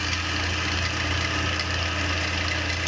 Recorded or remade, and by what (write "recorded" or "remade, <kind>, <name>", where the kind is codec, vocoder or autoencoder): recorded